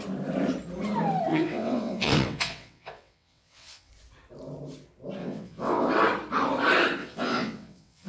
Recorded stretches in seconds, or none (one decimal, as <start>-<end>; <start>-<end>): 0.0-1.3; 3.9-5.2; 5.9-7.0